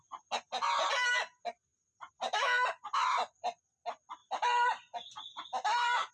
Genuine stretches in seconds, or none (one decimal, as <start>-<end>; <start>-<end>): 0.0-1.7; 2.8-6.1